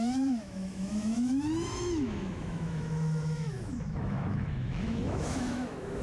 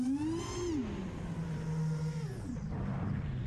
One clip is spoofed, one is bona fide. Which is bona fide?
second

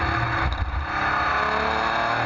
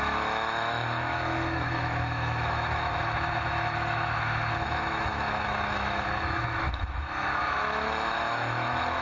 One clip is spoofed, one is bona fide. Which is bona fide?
first